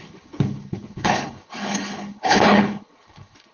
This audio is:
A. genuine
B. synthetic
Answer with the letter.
B